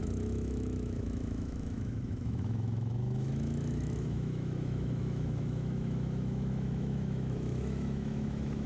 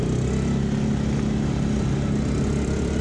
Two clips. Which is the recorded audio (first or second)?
second